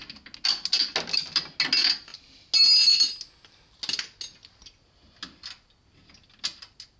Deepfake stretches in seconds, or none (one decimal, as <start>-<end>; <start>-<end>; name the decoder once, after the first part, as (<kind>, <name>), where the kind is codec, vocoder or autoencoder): none